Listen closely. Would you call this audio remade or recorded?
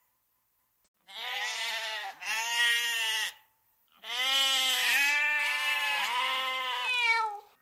recorded